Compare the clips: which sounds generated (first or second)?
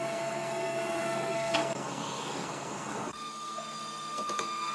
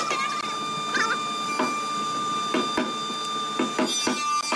first